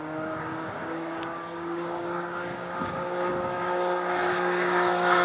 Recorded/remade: remade